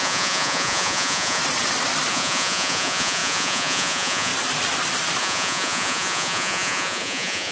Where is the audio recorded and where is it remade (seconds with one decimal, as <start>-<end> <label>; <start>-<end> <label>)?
0.0-1.4 remade; 1.4-2.1 recorded; 2.1-4.3 remade; 4.3-5.2 recorded; 5.2-7.5 remade